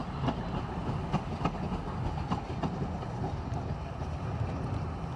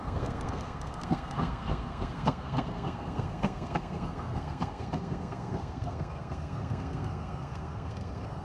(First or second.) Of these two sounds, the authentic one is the first